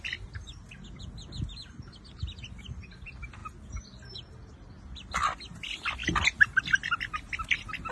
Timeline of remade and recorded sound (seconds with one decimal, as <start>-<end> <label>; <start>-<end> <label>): 0.0-7.9 recorded